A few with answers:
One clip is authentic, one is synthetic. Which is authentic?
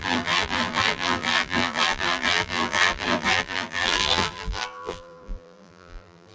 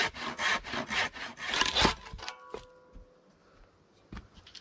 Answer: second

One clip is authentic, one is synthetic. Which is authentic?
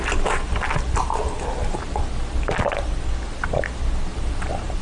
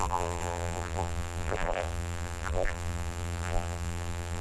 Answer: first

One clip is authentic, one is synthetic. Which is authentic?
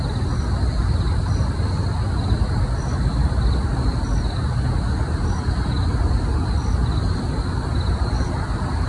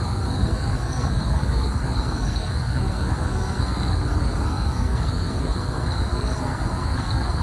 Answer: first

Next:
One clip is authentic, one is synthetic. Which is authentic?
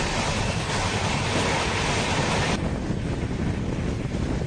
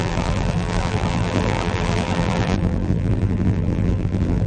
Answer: first